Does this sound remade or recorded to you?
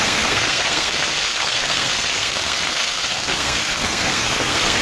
remade